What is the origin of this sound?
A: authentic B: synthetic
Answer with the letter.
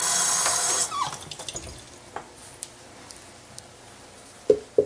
A